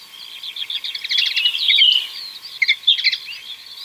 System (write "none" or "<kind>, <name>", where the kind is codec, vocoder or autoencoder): none